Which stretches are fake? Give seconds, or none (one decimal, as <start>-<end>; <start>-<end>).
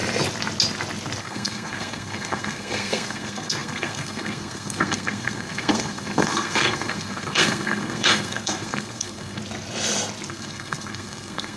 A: 1.2-9.4; 10.3-11.6